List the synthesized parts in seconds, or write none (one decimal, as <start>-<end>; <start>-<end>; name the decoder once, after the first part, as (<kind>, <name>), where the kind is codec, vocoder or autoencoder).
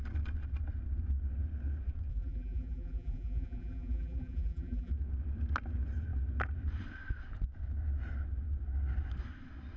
2.1-4.9 (vocoder, BigVGAN v2)